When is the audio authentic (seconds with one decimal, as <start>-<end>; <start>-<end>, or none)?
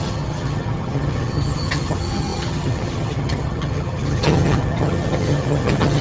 none